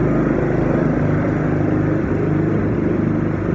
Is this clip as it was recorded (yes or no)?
no